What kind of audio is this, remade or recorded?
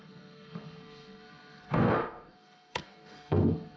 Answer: remade